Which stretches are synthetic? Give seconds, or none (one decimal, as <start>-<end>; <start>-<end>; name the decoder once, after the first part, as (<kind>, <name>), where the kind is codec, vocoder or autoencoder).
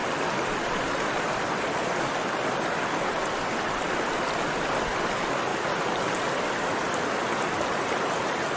0.0-1.8 (vocoder, BigVGAN v2)